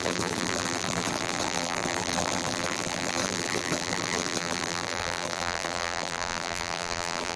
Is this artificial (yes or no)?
yes